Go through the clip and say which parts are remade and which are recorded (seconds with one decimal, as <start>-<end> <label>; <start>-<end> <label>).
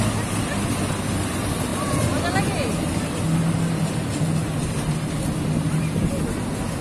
0.0-6.8 recorded